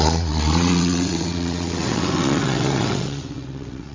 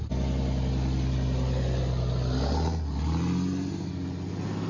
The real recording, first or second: second